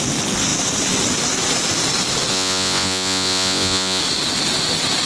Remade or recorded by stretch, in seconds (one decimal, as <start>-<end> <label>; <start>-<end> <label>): 0.0-2.3 recorded; 2.3-4.0 remade; 4.0-5.1 recorded